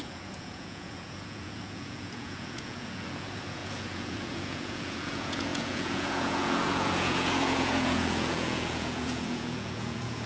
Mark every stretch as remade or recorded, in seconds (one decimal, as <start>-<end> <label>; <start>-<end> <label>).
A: 0.0-10.3 remade